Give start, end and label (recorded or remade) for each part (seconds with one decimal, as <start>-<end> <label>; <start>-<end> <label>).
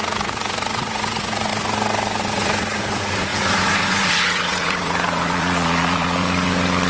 0.0-1.5 remade; 1.5-2.2 recorded; 2.2-6.2 remade; 6.2-6.9 recorded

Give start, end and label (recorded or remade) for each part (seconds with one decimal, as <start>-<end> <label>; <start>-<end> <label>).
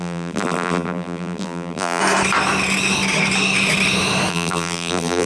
0.0-2.0 remade; 2.0-4.3 recorded; 4.3-5.3 remade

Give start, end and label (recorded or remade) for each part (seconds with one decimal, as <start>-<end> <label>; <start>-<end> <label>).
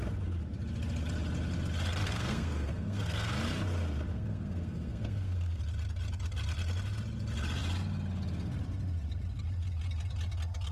0.0-2.0 recorded; 2.0-3.3 remade; 3.3-4.1 recorded; 4.1-5.6 remade; 5.6-10.7 recorded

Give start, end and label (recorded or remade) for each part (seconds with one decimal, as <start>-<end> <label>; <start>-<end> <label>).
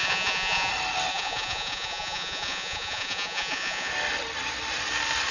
0.0-0.7 remade; 0.7-1.1 recorded; 1.1-3.9 remade; 3.9-5.3 recorded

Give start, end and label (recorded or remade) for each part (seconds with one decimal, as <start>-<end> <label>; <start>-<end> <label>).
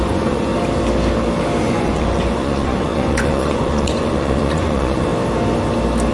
0.0-0.5 remade; 0.5-1.6 recorded; 1.6-5.1 remade; 5.1-6.1 recorded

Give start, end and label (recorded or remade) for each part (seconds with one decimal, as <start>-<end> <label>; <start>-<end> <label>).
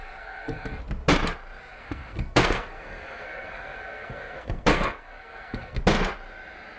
0.0-0.8 remade; 0.8-1.7 recorded; 1.7-5.8 remade; 5.8-6.8 recorded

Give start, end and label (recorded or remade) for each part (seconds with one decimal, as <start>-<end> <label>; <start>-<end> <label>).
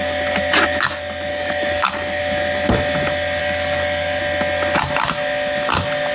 0.0-1.3 recorded; 1.3-2.2 remade; 2.2-3.4 recorded; 3.4-4.2 remade; 4.2-6.1 recorded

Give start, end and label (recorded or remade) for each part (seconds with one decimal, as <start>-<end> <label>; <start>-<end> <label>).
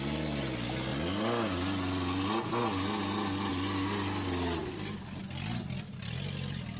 0.0-6.8 recorded